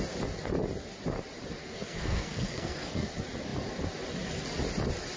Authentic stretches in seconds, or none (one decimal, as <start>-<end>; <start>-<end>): 0.0-1.6; 3.1-5.2